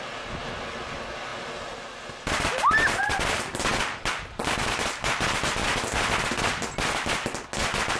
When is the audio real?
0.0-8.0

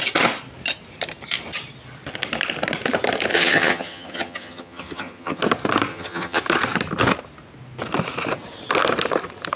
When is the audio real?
0.0-3.3; 5.4-5.9; 6.4-9.6

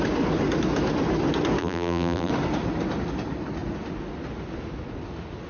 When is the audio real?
0.0-1.6; 2.3-5.5

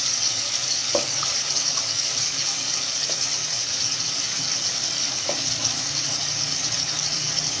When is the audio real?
none

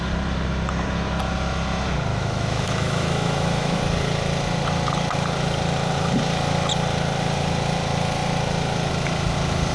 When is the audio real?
0.0-2.1; 3.8-9.7